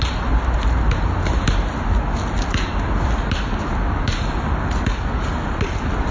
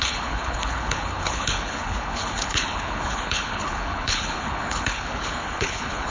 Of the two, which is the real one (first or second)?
first